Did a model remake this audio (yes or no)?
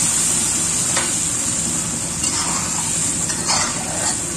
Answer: no